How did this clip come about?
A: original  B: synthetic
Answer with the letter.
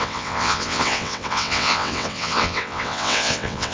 B